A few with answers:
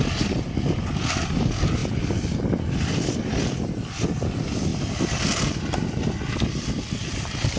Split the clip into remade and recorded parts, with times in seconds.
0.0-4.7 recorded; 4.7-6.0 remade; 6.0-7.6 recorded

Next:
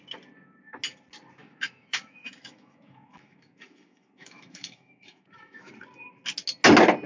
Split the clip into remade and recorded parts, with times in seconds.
0.0-1.4 recorded; 1.4-5.7 remade; 5.7-7.1 recorded

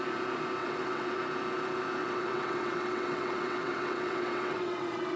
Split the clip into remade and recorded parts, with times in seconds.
0.0-0.6 recorded; 0.6-1.2 remade; 1.2-2.0 recorded; 2.0-5.2 remade

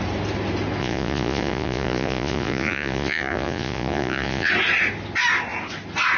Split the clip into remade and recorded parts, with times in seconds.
0.0-0.8 recorded; 0.8-4.5 remade; 4.5-6.2 recorded

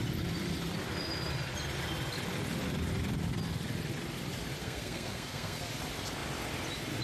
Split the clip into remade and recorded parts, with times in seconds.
0.0-4.6 recorded; 4.6-5.6 remade; 5.6-7.0 recorded

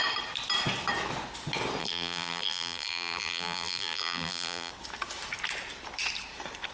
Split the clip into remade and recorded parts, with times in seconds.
0.0-1.8 recorded; 1.8-4.7 remade; 4.7-6.7 recorded

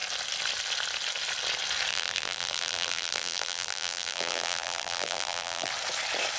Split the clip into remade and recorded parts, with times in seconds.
0.0-1.9 recorded; 1.9-5.7 remade; 5.7-6.4 recorded